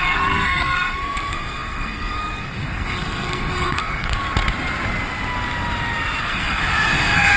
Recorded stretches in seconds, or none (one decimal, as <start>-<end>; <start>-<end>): 4.2-6.2

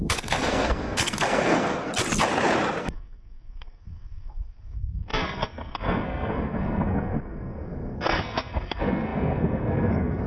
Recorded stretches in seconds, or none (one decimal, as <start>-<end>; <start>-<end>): 1.9-2.8

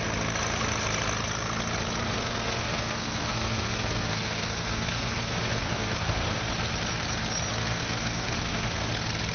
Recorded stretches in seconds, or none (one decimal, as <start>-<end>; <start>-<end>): 0.0-2.1; 6.4-7.5; 8.9-9.3

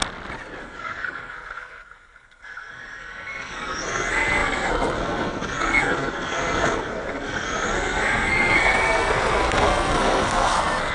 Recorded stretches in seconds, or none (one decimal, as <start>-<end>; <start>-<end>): 0.0-0.6

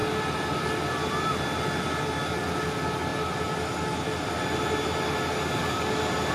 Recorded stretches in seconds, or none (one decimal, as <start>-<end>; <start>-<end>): 0.0-6.3

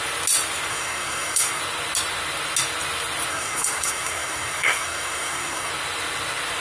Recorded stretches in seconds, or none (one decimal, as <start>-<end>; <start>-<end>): 0.0-0.7; 1.6-3.3; 5.7-6.6

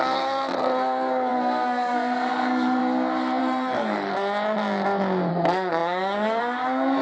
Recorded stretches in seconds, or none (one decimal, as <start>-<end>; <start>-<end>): 2.8-3.4; 4.1-5.3

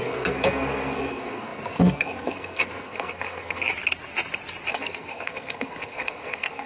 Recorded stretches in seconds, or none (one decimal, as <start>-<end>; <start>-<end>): 3.7-4.7